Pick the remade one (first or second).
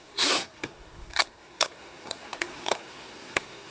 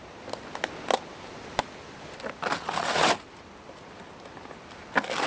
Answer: first